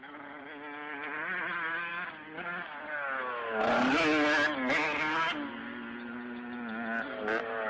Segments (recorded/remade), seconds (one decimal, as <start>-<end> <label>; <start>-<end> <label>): 0.0-7.7 recorded